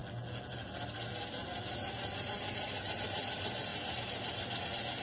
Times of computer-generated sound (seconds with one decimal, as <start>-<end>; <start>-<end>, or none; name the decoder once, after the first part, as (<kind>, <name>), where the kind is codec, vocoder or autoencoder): none